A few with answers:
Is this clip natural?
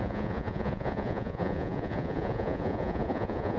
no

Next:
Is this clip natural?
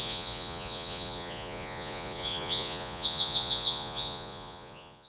no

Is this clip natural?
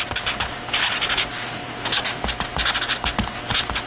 yes